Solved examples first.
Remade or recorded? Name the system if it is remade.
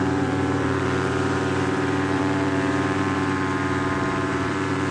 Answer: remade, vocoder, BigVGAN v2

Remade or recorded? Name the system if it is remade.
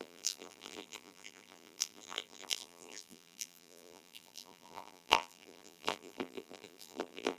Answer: remade, vocoder, BigVGAN v2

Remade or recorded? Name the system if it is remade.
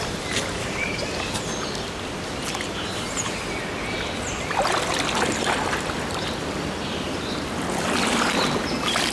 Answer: recorded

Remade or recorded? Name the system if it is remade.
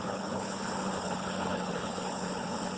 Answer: remade, codec, HILCodec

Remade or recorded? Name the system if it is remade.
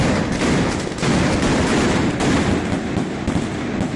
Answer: recorded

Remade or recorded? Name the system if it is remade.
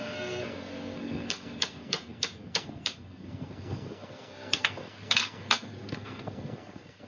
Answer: remade, codec, SNAC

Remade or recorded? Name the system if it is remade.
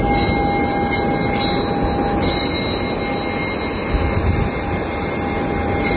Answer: recorded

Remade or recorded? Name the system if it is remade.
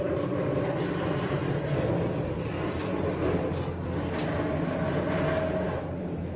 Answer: recorded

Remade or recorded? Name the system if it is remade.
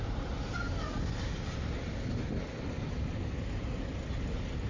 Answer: recorded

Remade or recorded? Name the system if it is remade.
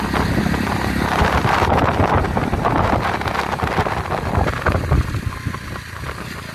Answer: recorded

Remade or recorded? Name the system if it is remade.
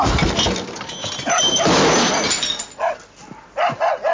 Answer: recorded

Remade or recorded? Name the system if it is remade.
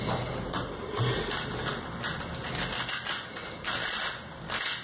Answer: recorded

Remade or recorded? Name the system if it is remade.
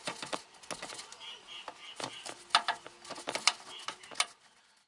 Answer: recorded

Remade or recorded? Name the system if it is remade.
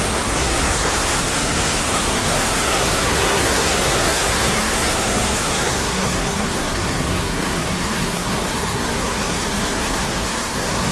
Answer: remade, codec, SNAC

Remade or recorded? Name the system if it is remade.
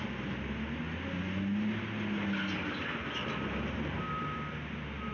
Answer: recorded